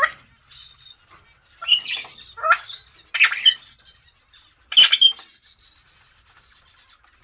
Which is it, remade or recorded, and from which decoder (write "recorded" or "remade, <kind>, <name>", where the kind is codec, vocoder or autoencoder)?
recorded